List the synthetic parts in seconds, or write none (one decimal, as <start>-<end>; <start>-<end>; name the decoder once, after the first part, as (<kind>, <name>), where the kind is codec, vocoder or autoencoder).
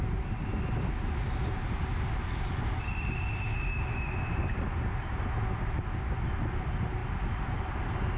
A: none